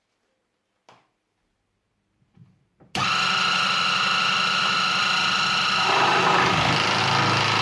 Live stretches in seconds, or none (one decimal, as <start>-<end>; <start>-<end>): 0.0-7.6